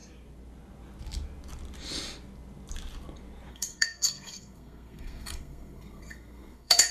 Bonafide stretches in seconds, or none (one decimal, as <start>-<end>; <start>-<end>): 0.0-3.5

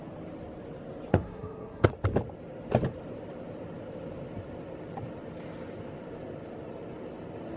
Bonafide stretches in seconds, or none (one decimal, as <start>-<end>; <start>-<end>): 0.0-1.1; 1.9-7.6

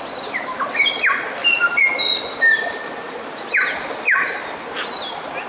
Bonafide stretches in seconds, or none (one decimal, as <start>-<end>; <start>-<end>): 0.0-5.5

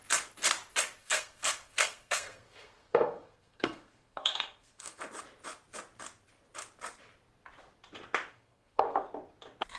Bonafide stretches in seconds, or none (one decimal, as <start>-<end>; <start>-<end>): 0.0-1.0; 5.0-8.3; 9.0-9.8